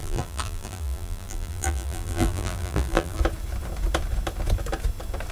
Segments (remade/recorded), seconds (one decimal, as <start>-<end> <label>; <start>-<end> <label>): 0.0-3.2 remade; 3.2-5.3 recorded